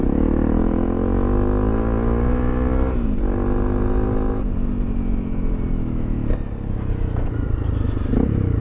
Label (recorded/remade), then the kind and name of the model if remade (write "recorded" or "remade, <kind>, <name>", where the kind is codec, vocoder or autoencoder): recorded